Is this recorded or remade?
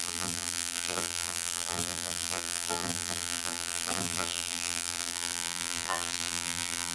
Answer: remade